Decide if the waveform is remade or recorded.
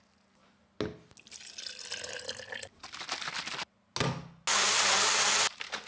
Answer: recorded